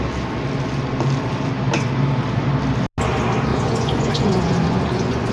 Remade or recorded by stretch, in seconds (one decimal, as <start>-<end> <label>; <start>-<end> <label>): 0.0-3.5 recorded; 3.5-5.3 remade